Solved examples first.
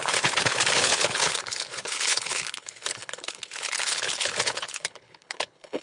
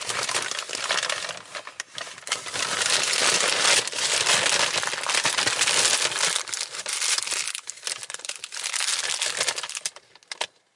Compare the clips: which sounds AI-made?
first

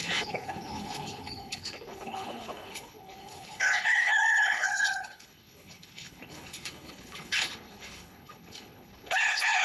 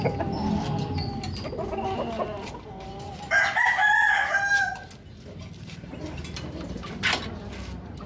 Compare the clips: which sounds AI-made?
first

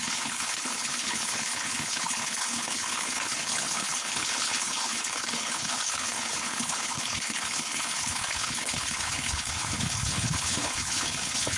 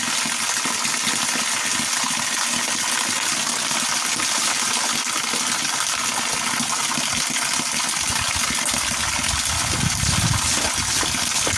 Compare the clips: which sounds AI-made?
first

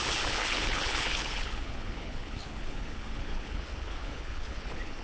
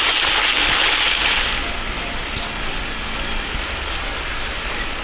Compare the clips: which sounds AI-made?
first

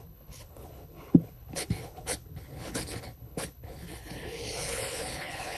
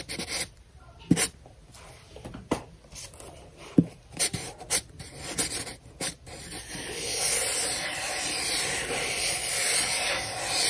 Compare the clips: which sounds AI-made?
first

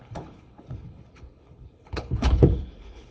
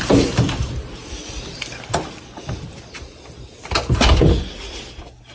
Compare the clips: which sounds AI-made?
first